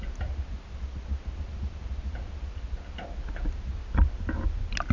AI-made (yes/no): no